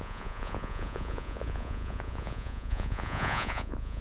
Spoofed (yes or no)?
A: yes